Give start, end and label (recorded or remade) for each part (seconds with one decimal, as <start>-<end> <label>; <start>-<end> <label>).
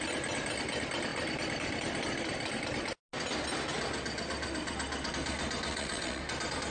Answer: 0.0-5.7 recorded; 5.7-6.2 remade; 6.2-6.7 recorded